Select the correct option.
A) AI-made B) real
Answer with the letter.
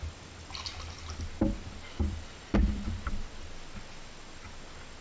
B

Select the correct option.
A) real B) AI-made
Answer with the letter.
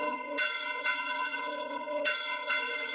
B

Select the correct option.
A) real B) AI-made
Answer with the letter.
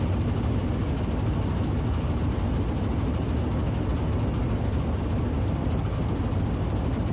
A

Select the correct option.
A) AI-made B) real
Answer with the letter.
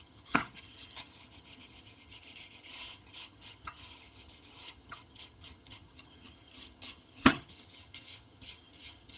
A